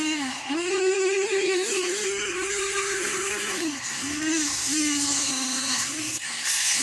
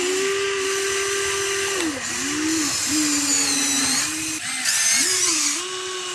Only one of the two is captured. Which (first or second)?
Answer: second